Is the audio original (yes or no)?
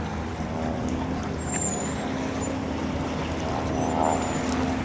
yes